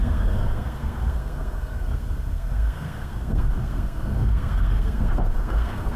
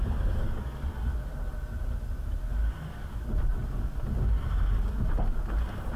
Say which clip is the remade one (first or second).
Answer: first